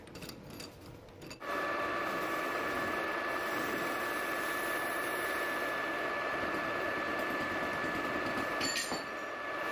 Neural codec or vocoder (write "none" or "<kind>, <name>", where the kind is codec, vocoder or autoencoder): none